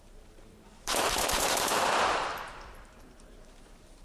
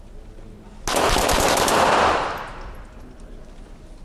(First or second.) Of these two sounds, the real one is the second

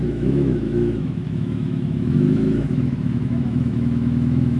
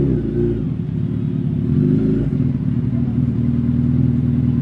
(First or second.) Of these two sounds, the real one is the second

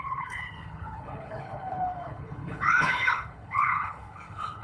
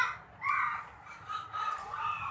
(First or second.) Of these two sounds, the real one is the second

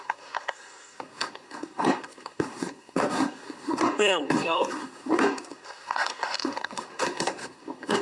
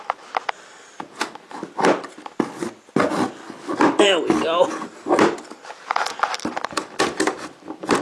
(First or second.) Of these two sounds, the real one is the second